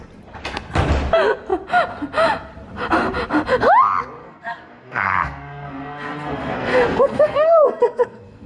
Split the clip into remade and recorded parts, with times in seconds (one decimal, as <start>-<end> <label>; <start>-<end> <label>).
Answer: 0.0-4.2 recorded; 4.2-8.5 remade